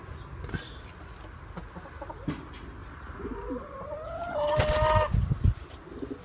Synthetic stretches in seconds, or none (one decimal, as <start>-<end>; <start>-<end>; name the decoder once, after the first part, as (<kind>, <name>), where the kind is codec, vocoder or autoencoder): none